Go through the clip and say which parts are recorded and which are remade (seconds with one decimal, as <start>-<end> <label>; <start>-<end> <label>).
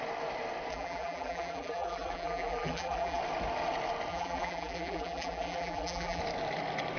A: 0.0-0.7 recorded; 0.7-3.2 remade; 3.2-4.1 recorded; 4.1-6.2 remade; 6.2-7.0 recorded